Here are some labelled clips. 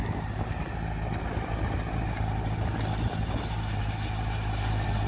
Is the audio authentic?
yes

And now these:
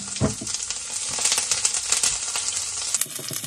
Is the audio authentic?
yes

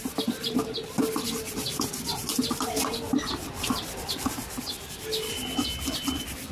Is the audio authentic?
yes